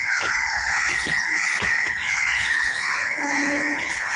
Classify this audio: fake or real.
fake